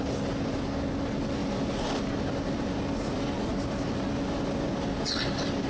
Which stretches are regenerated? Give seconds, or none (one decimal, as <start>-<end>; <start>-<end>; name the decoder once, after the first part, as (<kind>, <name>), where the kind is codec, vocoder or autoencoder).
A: none